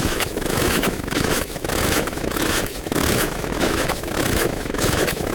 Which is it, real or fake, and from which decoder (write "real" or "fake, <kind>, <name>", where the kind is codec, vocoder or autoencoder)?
fake, autoencoder, DAC-VAE